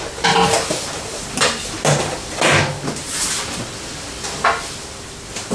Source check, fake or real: real